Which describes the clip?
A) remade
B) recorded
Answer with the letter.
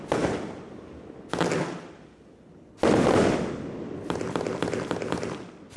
B